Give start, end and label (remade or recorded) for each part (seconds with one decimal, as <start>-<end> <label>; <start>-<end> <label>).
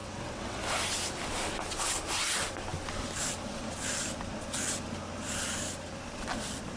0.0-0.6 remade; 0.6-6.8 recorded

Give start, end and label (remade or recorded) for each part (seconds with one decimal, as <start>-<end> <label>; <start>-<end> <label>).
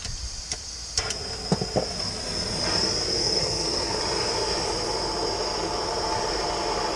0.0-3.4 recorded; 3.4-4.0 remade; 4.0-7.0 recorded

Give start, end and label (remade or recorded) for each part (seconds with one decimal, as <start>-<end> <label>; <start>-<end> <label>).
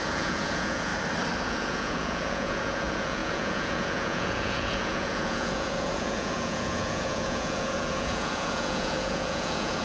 0.0-0.9 remade; 0.9-1.4 recorded; 1.4-9.8 remade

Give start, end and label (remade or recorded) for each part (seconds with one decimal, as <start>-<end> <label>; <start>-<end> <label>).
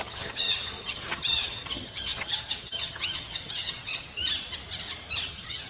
0.0-4.2 remade; 4.2-5.3 recorded; 5.3-5.7 remade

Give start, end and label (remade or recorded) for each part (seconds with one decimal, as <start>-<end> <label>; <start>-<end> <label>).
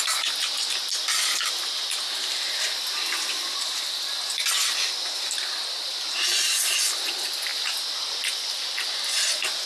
0.0-9.7 recorded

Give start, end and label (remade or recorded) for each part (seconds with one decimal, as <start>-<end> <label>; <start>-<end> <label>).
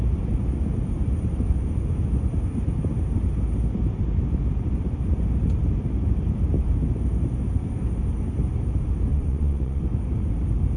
0.0-9.1 recorded; 9.1-9.8 remade; 9.8-10.8 recorded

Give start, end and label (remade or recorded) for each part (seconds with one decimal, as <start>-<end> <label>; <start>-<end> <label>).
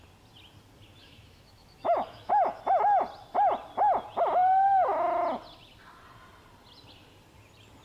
0.0-1.0 recorded; 1.0-2.3 remade; 2.3-7.8 recorded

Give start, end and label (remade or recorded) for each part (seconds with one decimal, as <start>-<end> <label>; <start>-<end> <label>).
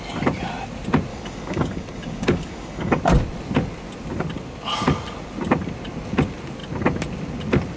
0.0-1.1 recorded; 1.1-3.0 remade; 3.0-7.8 recorded